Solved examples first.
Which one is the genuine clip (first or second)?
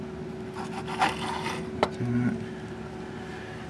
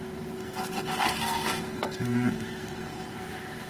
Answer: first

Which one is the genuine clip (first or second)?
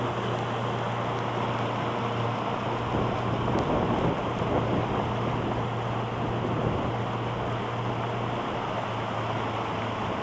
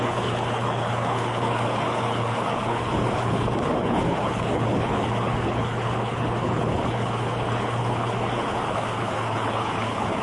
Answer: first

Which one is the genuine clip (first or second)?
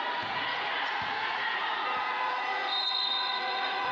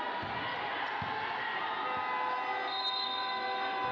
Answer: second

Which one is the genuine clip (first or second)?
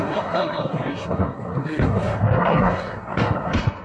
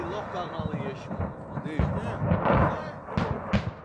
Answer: second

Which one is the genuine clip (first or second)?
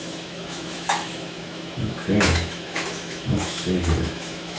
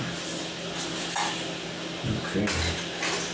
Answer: second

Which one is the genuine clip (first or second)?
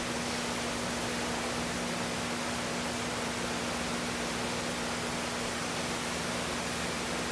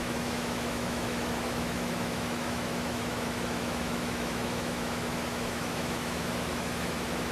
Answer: first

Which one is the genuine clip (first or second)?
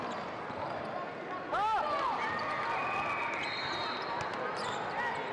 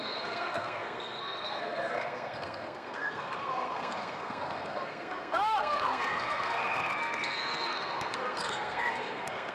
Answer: first